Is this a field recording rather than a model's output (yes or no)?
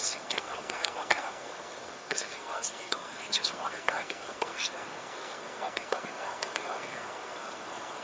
no